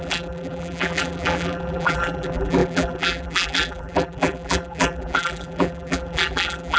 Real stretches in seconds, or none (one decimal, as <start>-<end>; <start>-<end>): none